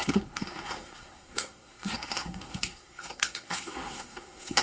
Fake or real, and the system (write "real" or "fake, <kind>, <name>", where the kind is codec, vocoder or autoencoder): fake, codec, SNAC